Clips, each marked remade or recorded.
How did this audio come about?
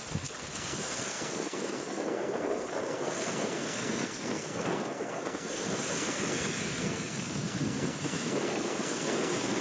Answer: remade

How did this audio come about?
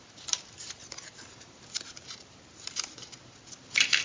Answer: remade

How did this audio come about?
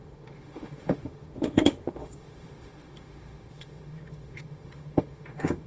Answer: remade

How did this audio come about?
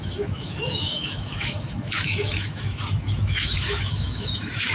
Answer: remade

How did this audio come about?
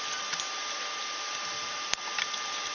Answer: recorded